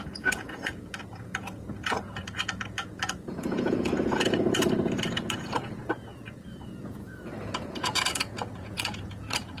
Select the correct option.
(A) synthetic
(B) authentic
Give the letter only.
A